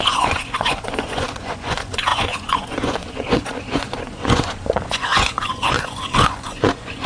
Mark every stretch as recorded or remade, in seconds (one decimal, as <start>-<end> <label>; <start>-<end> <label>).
0.0-7.1 remade